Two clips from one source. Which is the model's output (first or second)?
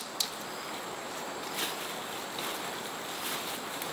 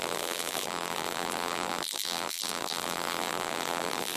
second